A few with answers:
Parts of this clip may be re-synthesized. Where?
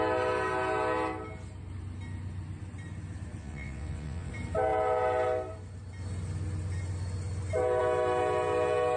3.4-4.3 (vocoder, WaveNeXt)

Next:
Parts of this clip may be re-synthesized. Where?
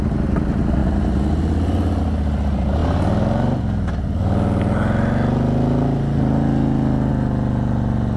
none